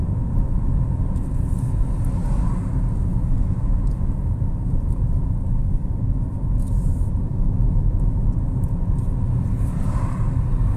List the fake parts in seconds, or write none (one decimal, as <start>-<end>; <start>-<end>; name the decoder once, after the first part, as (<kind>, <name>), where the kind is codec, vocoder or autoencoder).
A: 7.3-8.2 (autoencoder, DAC-VAE)